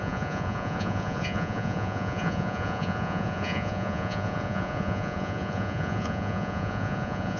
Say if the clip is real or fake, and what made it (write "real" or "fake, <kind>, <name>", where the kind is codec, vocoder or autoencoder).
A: fake, vocoder, Vocos